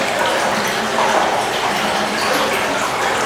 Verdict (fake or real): real